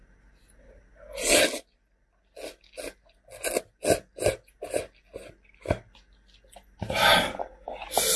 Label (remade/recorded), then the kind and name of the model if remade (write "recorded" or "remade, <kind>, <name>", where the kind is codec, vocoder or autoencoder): recorded